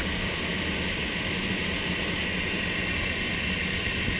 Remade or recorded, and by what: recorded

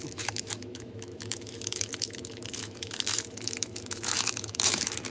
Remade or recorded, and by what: remade, autoencoder, DAC-VAE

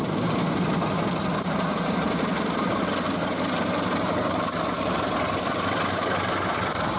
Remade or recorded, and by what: recorded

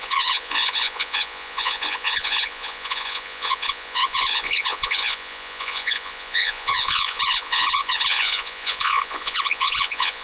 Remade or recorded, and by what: remade, vocoder, Vocos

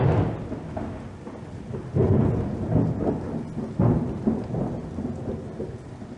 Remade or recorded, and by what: recorded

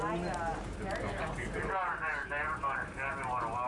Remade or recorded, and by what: recorded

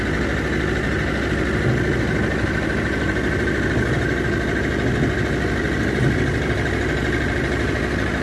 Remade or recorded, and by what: recorded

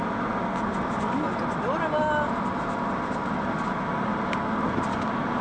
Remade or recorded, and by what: recorded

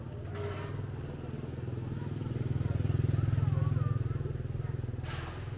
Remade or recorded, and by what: recorded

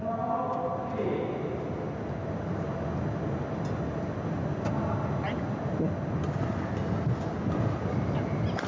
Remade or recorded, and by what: recorded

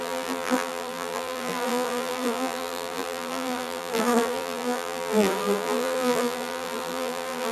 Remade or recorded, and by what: remade, vocoder, BigVGAN v2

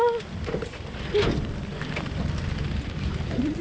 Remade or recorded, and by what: recorded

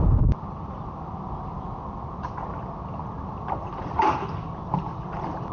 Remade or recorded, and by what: remade, vocoder, BigVGAN v2